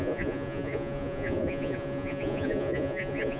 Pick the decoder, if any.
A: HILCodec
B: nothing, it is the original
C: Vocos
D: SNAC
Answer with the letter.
C